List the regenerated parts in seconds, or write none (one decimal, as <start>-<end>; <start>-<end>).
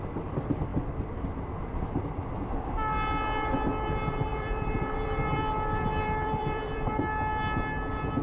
4.3-6.9